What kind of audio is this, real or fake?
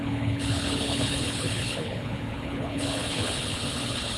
fake